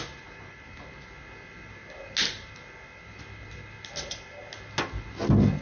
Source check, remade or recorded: recorded